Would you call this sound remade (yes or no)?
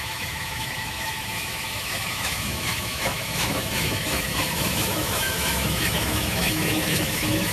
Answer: yes